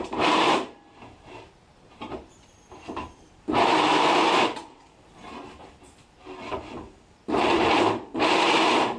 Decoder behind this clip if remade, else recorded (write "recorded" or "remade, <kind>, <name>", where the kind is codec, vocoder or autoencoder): remade, vocoder, BigVGAN v2